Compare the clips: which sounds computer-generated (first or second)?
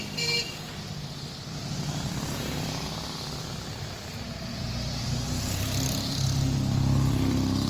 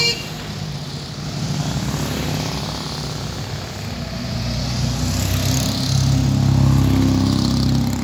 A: first